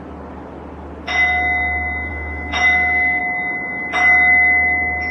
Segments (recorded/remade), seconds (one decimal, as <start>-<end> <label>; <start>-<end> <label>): 0.0-2.1 recorded; 2.1-3.2 remade; 3.2-5.1 recorded